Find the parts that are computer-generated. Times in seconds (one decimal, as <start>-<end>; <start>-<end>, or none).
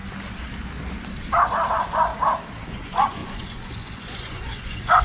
1.7-2.1; 2.7-5.0